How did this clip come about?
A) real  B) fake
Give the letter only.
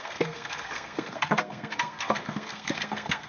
B